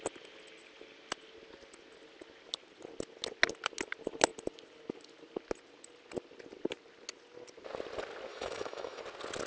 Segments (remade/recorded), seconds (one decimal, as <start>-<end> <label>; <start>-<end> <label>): 0.0-8.3 recorded; 8.3-9.0 remade; 9.0-9.5 recorded